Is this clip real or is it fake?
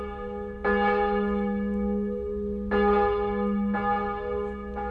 real